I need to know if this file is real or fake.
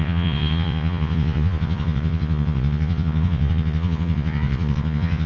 fake